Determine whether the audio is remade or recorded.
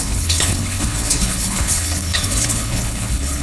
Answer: remade